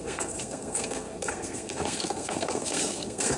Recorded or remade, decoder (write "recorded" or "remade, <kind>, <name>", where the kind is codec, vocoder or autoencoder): remade, codec, SNAC